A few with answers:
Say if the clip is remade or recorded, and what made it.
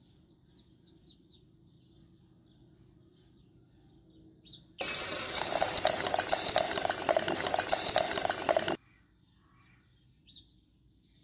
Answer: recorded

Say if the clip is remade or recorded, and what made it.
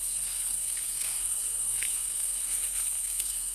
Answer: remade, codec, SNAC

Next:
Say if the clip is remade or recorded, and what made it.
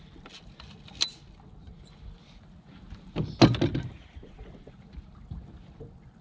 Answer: recorded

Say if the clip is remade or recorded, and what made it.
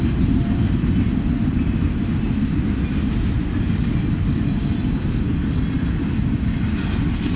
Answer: recorded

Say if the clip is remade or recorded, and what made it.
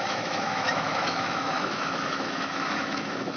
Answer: remade, autoencoder, DAC-VAE